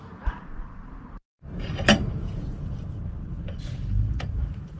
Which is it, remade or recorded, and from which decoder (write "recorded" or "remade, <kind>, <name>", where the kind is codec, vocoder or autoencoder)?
remade, vocoder, BigVGAN v2